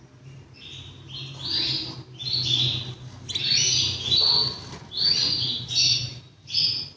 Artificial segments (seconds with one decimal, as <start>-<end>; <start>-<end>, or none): none